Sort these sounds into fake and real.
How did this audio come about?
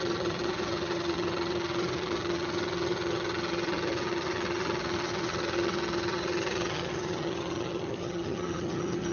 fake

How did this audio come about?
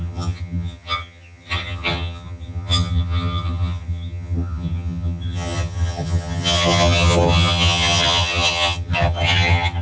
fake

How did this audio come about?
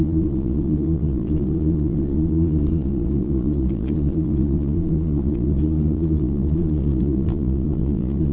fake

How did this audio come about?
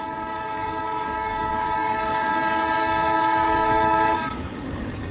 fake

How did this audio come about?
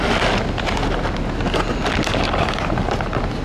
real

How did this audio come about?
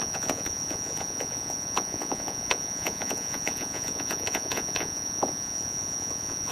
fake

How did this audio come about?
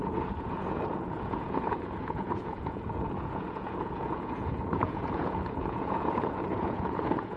fake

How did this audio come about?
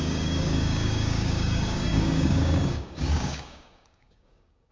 fake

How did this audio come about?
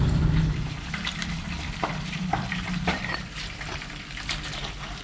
fake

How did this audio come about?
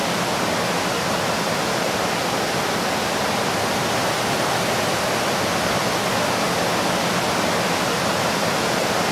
real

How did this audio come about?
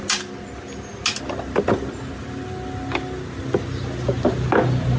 real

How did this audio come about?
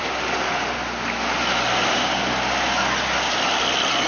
real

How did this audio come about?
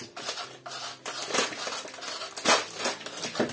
real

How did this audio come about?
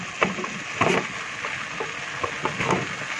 real